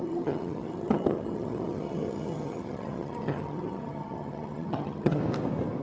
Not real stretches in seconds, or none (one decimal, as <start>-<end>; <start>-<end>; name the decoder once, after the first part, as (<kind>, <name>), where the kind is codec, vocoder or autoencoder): 0.0-5.2 (vocoder, HiFi-GAN)